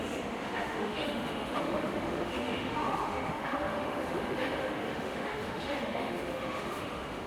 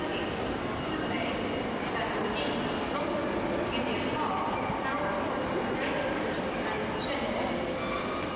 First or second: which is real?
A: second